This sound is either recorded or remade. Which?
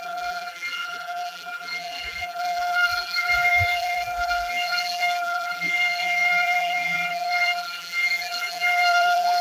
remade